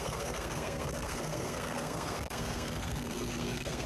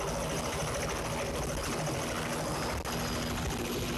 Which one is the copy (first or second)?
first